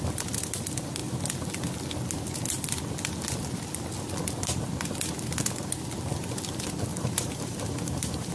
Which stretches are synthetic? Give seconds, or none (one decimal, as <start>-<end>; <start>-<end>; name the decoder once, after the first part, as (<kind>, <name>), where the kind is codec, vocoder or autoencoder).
6.9-8.3 (vocoder, BigVGAN v2)